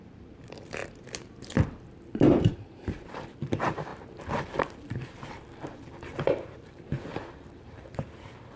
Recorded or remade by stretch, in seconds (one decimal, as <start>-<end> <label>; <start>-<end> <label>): 0.0-0.8 remade; 0.8-2.5 recorded; 2.5-8.6 remade